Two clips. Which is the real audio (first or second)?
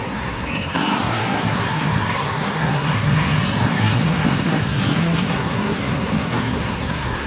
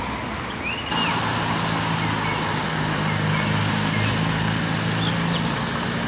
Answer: second